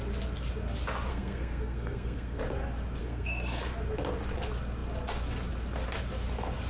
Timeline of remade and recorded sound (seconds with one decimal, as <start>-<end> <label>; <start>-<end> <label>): 0.0-1.1 recorded; 1.1-2.4 remade; 2.4-3.0 recorded; 3.0-3.7 remade; 3.7-6.7 recorded